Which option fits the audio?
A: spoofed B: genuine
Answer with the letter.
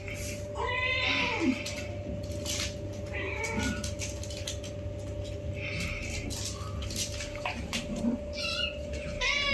B